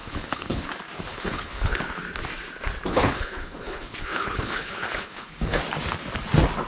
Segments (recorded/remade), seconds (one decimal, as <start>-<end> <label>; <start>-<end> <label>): 0.0-0.7 remade; 0.7-1.1 recorded; 1.1-1.8 remade; 1.8-2.9 recorded; 2.9-5.6 remade; 5.6-6.7 recorded